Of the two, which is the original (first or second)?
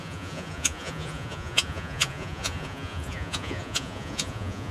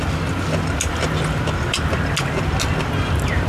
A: second